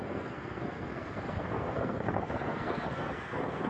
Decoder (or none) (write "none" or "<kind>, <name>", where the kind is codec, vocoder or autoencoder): codec, SNAC